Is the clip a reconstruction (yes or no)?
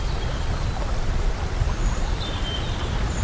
no